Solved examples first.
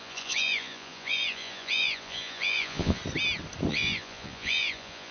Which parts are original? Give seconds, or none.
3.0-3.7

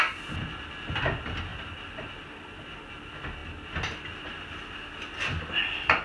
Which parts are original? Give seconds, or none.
0.0-1.5; 2.6-6.0

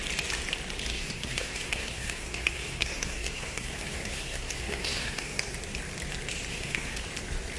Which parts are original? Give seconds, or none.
0.0-0.9; 5.4-6.5; 7.0-7.6